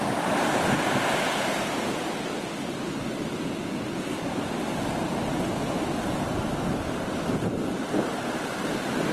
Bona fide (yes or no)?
yes